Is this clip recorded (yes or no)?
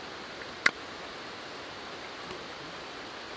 yes